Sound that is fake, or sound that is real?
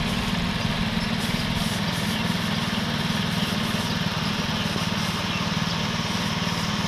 real